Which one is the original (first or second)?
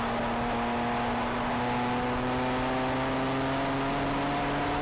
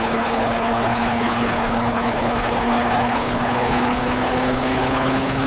first